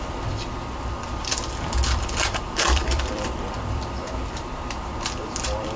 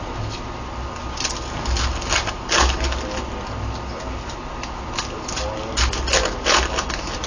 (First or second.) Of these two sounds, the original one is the second